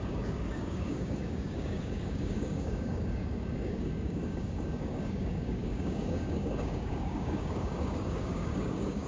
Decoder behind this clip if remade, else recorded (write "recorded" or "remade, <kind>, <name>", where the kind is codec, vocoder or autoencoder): remade, codec, DAC